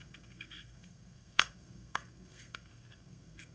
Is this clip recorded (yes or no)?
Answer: no